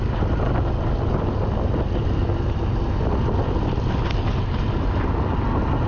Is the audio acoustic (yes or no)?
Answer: yes